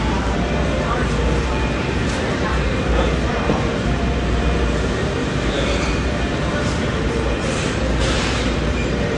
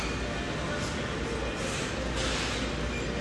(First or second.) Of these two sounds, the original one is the second